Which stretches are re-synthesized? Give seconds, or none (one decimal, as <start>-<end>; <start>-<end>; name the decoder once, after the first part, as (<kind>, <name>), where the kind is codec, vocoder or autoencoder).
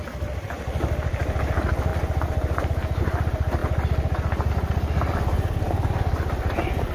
none